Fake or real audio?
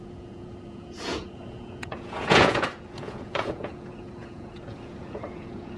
fake